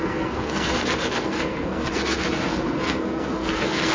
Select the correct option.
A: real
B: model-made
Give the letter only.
B